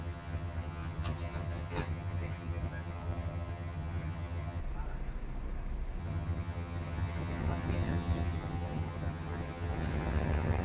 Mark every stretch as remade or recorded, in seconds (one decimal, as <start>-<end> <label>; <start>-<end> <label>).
0.0-4.6 remade; 4.6-6.0 recorded; 6.0-10.6 remade